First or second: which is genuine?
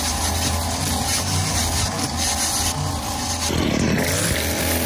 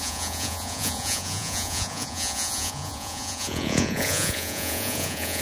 first